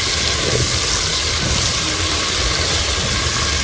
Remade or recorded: recorded